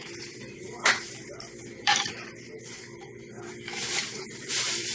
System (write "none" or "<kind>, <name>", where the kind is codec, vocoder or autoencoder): vocoder, BigVGAN v2